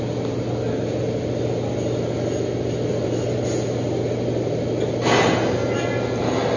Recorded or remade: recorded